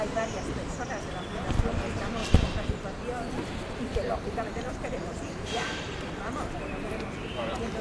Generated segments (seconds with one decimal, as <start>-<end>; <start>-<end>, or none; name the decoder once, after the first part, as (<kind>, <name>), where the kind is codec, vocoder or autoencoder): 0.0-2.2 (vocoder, BigVGAN v2); 2.7-7.8